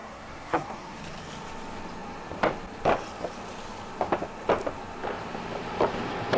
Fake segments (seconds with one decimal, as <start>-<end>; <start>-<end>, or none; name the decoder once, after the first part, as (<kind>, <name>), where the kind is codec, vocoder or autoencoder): 0.0-1.0 (codec, SNAC)